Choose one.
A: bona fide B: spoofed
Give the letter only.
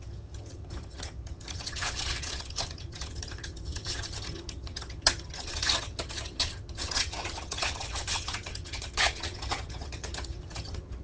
B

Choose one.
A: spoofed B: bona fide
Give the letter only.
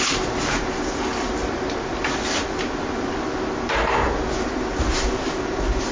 B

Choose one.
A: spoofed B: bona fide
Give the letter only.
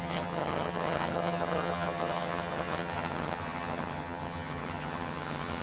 A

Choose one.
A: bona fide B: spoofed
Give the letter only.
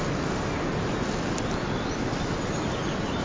A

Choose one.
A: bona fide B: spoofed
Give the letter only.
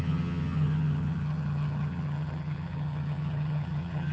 B